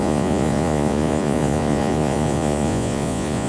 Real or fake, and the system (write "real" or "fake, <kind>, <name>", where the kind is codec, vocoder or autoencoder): fake, vocoder, Vocos